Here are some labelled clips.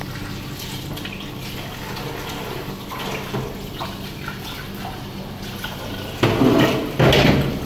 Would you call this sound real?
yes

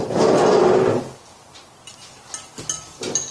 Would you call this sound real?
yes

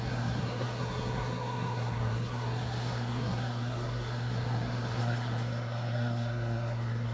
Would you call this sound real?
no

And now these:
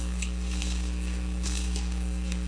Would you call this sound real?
no